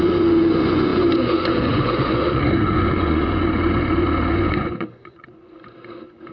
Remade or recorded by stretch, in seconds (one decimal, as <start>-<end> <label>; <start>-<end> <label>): 0.0-6.3 remade